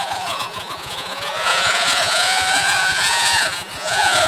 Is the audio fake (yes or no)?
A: yes